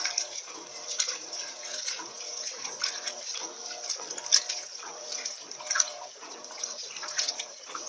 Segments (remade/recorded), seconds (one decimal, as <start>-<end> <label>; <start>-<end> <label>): 0.0-3.6 remade; 3.6-4.5 recorded; 4.5-7.9 remade